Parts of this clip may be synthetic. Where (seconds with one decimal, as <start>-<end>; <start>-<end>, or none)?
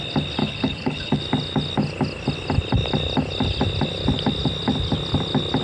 0.4-1.2